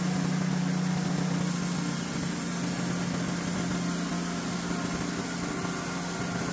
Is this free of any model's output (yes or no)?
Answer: yes